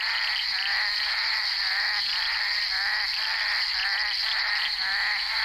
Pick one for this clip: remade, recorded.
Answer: recorded